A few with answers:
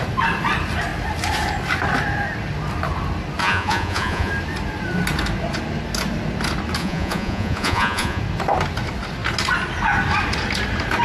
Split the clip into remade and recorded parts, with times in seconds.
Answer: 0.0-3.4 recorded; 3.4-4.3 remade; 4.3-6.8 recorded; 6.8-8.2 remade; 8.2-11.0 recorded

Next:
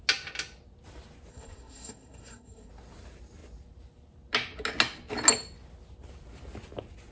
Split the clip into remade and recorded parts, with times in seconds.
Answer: 0.0-1.3 recorded; 1.3-2.7 remade; 2.7-7.1 recorded